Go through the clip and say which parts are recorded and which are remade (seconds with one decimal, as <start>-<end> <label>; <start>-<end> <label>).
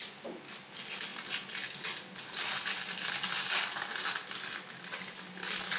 0.0-5.8 recorded